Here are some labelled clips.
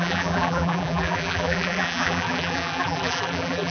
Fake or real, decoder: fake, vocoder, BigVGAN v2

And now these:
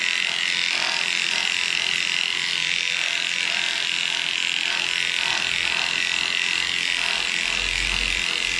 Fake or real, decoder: real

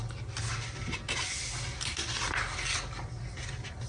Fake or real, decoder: real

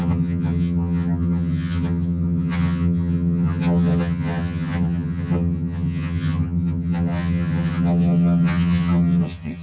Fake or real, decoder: fake, vocoder, HiFi-GAN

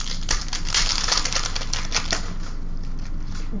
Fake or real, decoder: real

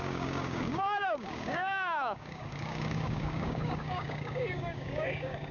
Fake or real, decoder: fake, codec, DAC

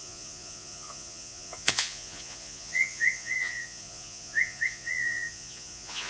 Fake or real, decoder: fake, vocoder, Vocos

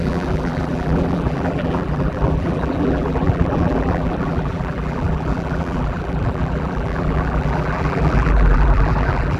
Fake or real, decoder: fake, vocoder, BigVGAN v2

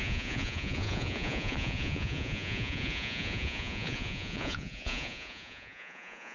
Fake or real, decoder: fake, vocoder, Vocos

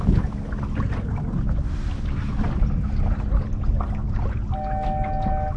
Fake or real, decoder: real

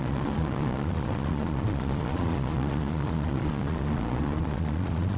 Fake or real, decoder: fake, vocoder, Vocos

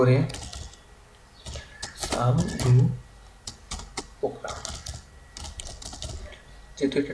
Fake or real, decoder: real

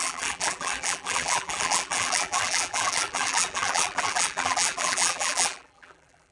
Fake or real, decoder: fake, vocoder, BigVGAN v2